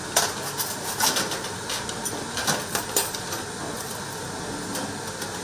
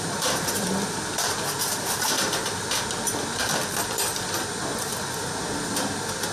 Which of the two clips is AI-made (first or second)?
second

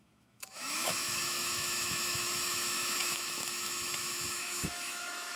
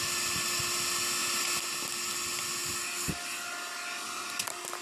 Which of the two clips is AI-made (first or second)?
first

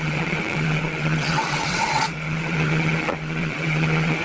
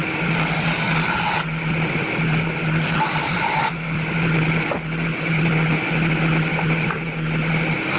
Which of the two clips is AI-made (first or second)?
first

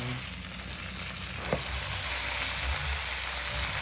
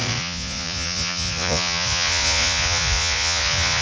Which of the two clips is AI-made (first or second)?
second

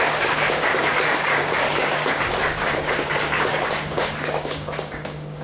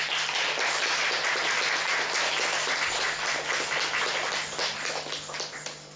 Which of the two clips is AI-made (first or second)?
first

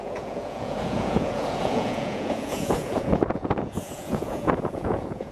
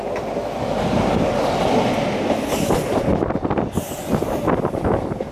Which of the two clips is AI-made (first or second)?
first